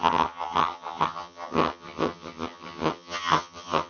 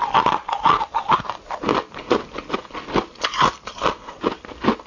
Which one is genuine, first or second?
second